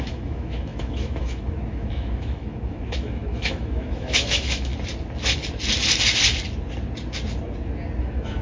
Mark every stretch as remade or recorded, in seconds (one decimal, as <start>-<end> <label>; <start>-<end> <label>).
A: 0.0-4.7 remade; 4.7-8.0 recorded; 8.0-8.4 remade